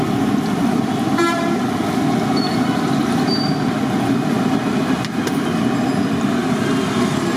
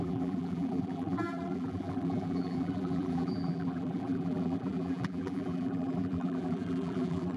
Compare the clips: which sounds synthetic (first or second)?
second